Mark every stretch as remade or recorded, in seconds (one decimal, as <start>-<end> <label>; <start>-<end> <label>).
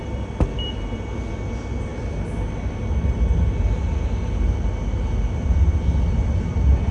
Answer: 0.0-6.9 recorded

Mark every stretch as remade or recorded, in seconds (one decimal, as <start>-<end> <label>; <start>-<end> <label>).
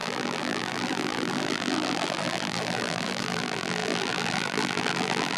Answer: 0.0-5.4 remade